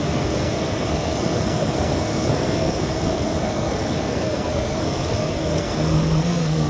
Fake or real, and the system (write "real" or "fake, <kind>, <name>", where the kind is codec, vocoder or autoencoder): fake, codec, SNAC